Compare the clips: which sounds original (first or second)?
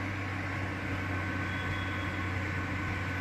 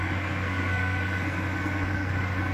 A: first